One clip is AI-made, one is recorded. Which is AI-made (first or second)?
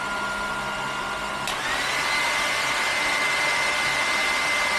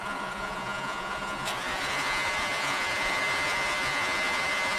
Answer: second